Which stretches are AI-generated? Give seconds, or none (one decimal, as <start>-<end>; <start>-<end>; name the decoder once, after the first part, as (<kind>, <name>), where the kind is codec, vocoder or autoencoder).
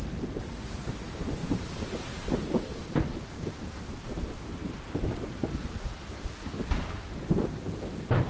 1.4-4.9 (vocoder, BigVGAN v2)